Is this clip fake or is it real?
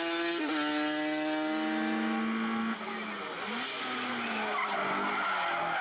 real